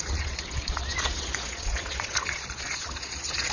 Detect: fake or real fake